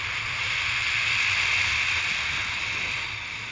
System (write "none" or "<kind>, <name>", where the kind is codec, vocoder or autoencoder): none